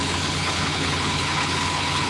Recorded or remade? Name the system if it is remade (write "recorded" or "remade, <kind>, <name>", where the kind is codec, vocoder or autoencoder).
remade, codec, HILCodec